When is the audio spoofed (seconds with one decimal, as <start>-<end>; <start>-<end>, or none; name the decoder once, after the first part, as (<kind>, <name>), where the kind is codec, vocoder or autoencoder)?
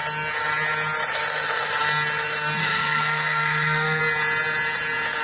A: 2.6-4.0 (codec, SNAC)